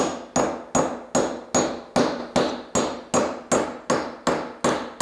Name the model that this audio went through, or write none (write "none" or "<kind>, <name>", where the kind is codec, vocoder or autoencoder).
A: none